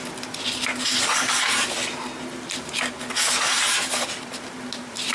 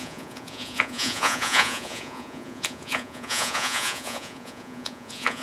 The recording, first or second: first